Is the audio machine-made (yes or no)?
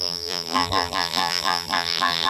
yes